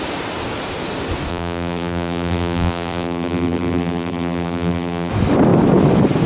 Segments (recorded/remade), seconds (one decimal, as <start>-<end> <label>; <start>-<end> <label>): 0.0-1.3 recorded; 1.3-5.1 remade; 5.1-6.3 recorded

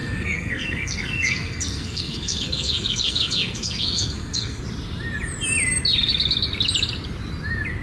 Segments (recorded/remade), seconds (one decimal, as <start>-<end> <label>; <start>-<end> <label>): 0.0-4.6 remade; 4.6-7.8 recorded

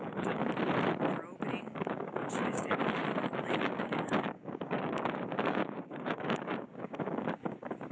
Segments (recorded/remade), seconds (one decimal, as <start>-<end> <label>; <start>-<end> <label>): 0.0-0.4 remade; 0.4-1.6 recorded; 1.6-2.8 remade; 2.8-3.6 recorded; 3.6-7.9 remade

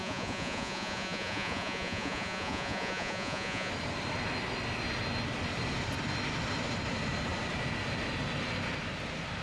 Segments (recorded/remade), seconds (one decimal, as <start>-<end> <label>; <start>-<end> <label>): 0.0-3.7 remade; 3.7-9.4 recorded

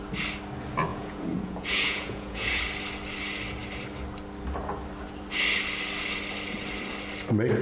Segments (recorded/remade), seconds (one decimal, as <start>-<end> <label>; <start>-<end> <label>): 0.0-0.9 recorded; 0.9-2.6 remade; 2.6-7.6 recorded

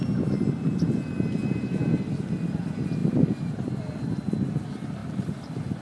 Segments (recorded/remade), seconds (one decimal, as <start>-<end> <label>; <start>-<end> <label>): 0.0-1.4 recorded; 1.4-2.0 remade; 2.0-3.0 recorded; 3.0-3.8 remade; 3.8-5.0 recorded; 5.0-5.8 remade

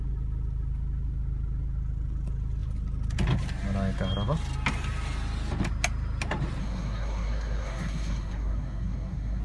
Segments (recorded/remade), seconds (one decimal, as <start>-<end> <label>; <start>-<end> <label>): 0.0-6.6 recorded; 6.6-9.4 remade